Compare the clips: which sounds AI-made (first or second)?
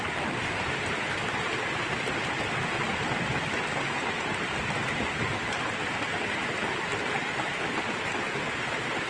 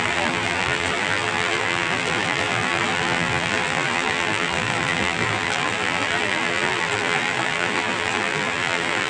second